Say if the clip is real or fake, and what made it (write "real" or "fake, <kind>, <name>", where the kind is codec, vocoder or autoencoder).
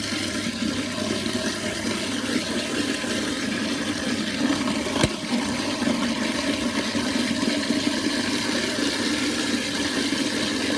real